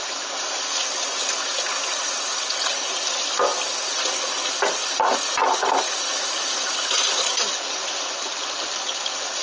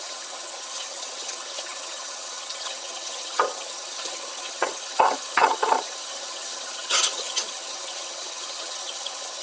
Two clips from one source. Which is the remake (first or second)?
second